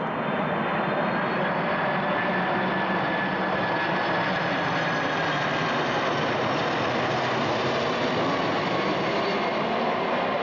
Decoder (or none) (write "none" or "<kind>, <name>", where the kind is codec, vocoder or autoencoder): none